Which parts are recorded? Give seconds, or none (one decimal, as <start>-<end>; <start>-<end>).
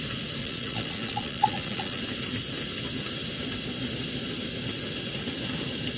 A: 0.0-0.4; 2.0-6.0